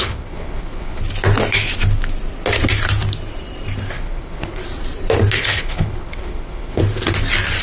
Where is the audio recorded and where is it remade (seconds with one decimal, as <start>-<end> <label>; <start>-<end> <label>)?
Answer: 0.0-1.0 remade; 1.0-3.9 recorded; 3.9-4.6 remade; 4.6-5.4 recorded; 5.4-6.8 remade; 6.8-7.6 recorded

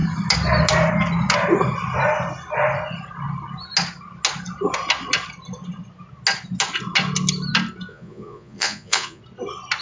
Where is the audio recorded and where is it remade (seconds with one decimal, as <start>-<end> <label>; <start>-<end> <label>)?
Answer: 0.0-7.9 recorded; 7.9-9.2 remade; 9.2-9.8 recorded

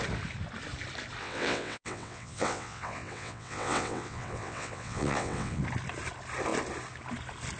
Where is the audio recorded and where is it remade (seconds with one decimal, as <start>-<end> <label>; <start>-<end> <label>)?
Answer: 0.0-1.2 recorded; 1.2-5.6 remade; 5.6-7.6 recorded

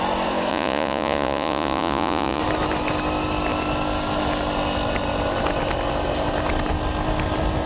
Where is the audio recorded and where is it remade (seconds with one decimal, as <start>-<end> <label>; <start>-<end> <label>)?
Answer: 0.0-0.5 recorded; 0.5-2.4 remade; 2.4-7.7 recorded

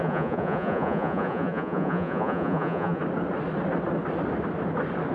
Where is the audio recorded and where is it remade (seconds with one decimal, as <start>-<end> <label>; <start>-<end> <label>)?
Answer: 0.0-3.0 remade; 3.0-5.1 recorded

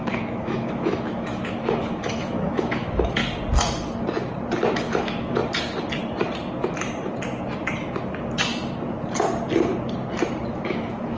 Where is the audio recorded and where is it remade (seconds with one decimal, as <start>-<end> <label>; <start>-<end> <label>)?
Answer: 0.0-3.2 remade; 3.2-4.9 recorded; 4.9-5.4 remade; 5.4-10.5 recorded; 10.5-11.2 remade